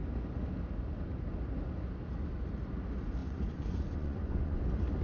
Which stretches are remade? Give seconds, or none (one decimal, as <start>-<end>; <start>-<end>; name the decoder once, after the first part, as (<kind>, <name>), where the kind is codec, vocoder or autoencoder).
3.2-4.6 (vocoder, Vocos)